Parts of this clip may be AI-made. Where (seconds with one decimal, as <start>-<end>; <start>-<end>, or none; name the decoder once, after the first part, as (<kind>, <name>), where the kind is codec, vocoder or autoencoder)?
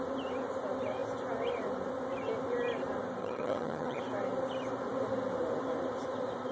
3.2-4.0 (vocoder, HiFi-GAN)